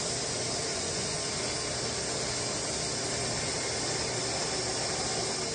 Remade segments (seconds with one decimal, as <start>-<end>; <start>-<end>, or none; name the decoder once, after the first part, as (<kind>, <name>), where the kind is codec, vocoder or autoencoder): 0.7-1.3 (vocoder, Vocos)